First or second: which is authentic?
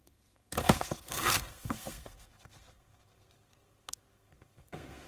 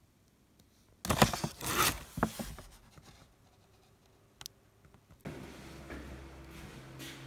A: second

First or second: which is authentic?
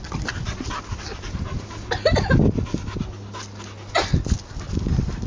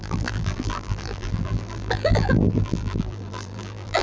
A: first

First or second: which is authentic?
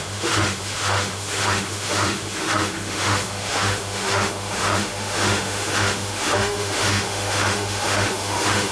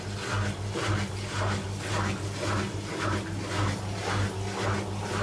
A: second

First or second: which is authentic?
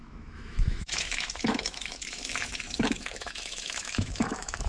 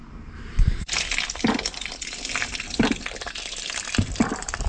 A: second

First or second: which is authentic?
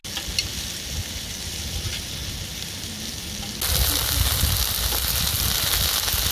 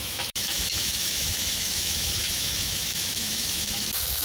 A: first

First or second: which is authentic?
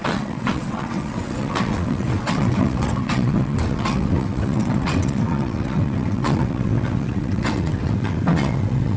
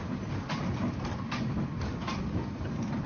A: second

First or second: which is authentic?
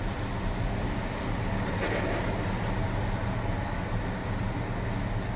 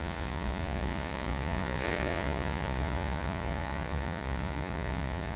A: first